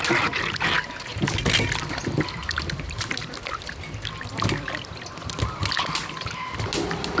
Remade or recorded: recorded